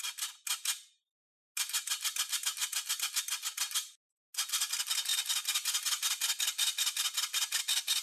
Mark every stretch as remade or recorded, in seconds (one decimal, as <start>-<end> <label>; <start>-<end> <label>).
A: 0.0-8.0 recorded